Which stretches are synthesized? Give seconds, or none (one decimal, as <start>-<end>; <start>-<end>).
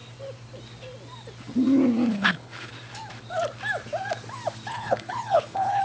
2.1-2.7; 4.7-5.8